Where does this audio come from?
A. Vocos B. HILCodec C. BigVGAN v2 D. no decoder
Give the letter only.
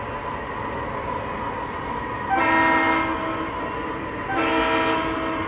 D